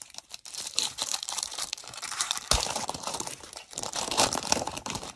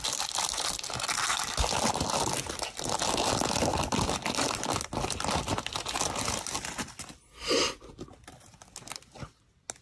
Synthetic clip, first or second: first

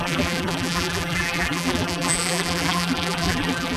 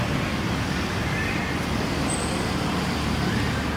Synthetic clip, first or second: first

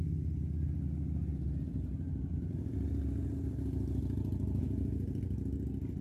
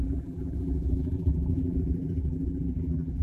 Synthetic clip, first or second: second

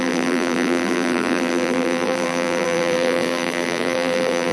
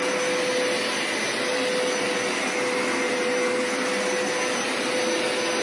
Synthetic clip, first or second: first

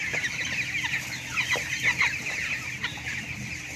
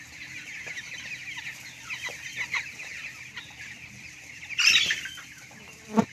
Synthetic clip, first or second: second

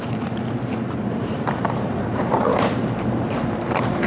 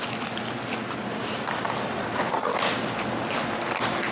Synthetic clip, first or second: first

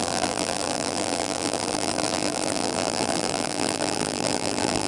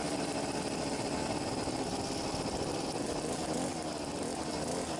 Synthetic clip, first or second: first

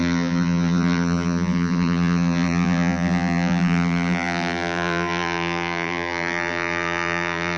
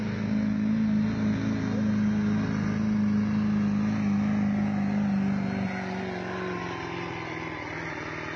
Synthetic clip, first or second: first